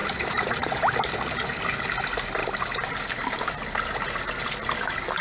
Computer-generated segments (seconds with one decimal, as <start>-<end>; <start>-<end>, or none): 0.0-1.1; 2.4-3.5